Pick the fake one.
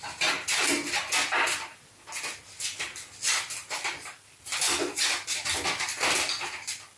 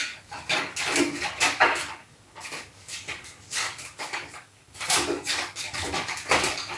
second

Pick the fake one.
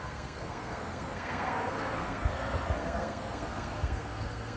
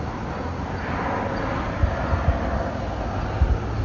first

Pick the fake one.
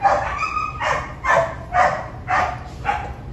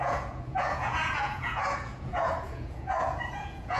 second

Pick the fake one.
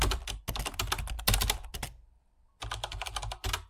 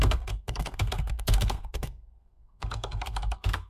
second